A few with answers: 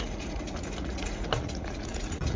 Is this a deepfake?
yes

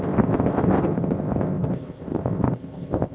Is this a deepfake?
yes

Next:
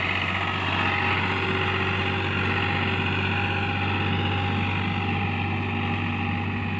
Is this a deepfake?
no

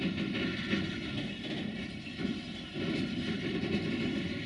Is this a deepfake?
no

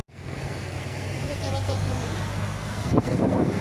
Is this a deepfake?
yes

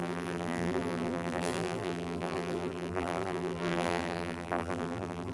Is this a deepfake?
yes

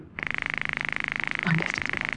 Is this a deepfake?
no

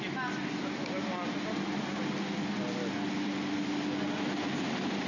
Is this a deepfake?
no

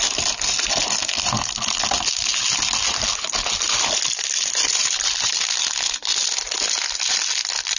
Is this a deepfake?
no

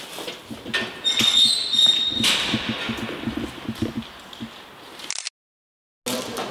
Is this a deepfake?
no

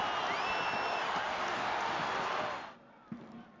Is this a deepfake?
no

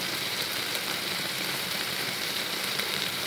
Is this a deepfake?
yes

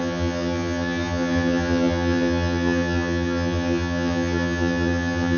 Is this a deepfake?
yes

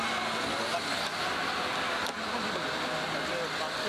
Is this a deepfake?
no